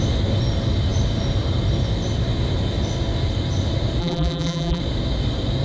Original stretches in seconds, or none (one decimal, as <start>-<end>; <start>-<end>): 0.0-4.0; 4.8-5.6